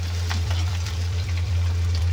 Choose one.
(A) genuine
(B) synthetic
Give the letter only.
B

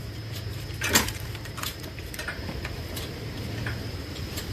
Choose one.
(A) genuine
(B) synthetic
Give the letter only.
B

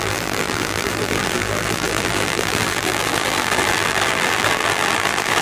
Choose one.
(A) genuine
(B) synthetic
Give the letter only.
B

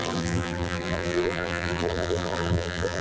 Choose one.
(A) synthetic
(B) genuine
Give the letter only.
A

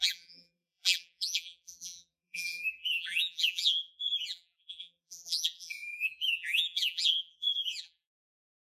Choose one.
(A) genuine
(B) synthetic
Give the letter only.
B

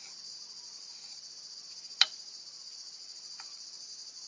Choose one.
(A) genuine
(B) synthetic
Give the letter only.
A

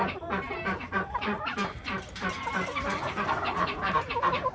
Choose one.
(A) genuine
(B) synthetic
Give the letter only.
B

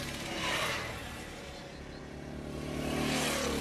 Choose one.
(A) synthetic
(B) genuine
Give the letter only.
B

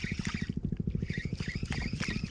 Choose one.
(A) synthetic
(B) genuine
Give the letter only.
B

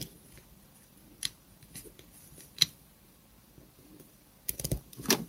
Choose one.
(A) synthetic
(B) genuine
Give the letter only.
A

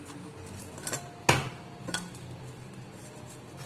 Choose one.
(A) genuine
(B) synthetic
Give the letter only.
A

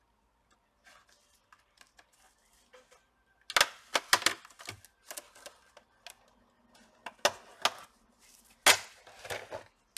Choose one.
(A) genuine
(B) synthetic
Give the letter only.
A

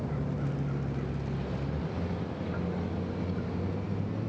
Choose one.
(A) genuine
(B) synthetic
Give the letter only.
A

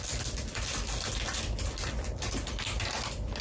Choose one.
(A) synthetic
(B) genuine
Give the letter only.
B